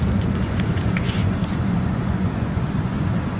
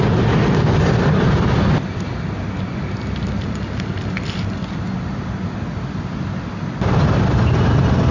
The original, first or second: second